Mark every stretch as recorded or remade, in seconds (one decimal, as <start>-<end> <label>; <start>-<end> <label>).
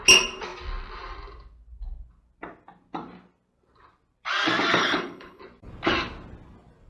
0.0-4.8 recorded; 4.8-5.4 remade; 5.4-6.9 recorded